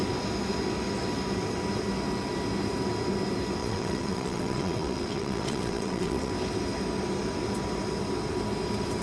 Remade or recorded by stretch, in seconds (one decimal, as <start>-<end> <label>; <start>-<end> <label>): 0.0-3.6 recorded; 3.6-6.3 remade; 6.3-9.0 recorded